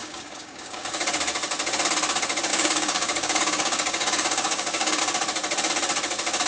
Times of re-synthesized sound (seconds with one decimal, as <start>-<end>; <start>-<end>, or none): 0.0-1.0; 2.5-5.0